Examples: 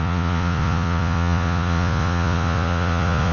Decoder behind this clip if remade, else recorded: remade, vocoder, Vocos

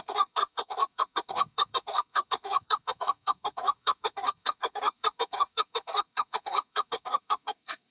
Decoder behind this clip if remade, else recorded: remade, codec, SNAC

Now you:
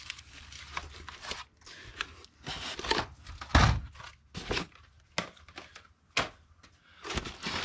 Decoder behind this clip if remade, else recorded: recorded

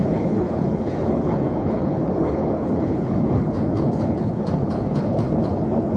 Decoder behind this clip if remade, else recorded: remade, codec, HILCodec